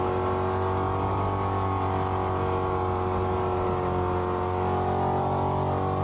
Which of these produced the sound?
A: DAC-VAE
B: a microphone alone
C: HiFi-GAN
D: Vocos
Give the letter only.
B